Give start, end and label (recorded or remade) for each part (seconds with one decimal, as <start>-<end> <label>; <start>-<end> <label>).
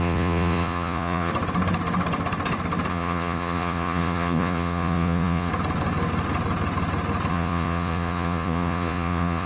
0.0-1.3 remade; 1.3-2.9 recorded; 2.9-5.5 remade; 5.5-7.3 recorded; 7.3-9.5 remade